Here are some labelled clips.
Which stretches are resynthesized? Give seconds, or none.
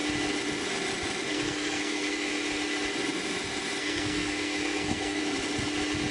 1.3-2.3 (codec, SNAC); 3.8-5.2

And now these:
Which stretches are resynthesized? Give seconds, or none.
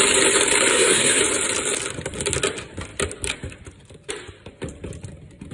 0.7-1.2 (codec, SNAC)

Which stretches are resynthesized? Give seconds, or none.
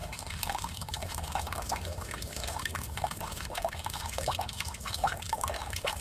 0.0-6.0 (autoencoder, DAC-VAE)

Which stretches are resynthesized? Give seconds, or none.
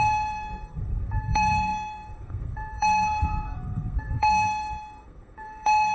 0.0-5.9 (codec, SNAC)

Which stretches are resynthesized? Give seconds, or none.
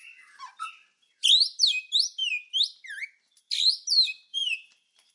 0.0-0.7 (vocoder, BigVGAN v2); 4.3-5.1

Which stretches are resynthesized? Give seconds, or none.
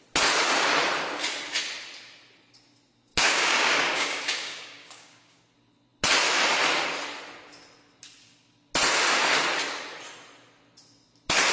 3.1-5.4 (codec, DAC)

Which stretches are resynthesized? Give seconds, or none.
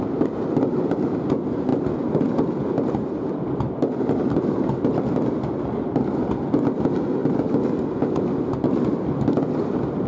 none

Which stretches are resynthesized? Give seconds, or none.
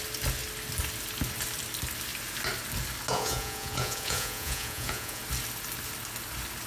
3.1-5.2 (vocoder, Vocos)